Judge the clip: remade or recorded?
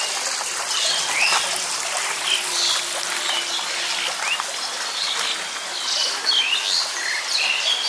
recorded